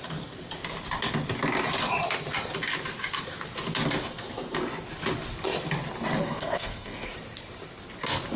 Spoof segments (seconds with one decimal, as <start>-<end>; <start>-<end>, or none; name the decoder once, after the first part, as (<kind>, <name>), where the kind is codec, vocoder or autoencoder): 6.2-7.1 (codec, SNAC)